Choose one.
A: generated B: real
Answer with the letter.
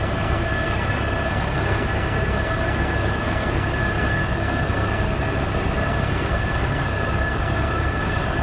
A